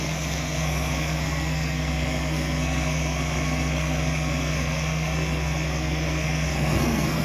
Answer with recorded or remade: remade